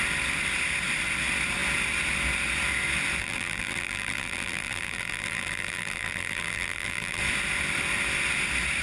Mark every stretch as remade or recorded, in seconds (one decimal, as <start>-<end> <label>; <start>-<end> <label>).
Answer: 0.0-3.2 recorded; 3.2-7.2 remade; 7.2-8.8 recorded